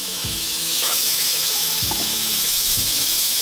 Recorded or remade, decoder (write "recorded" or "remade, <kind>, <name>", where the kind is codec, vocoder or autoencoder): remade, autoencoder, DAC-VAE